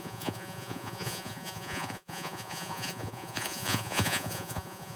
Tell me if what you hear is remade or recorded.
remade